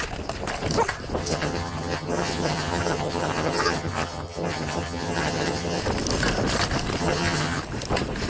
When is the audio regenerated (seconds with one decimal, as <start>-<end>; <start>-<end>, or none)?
1.2-5.8; 7.0-7.6